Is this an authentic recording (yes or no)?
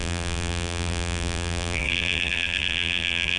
no